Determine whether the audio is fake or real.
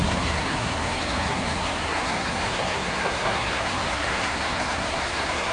fake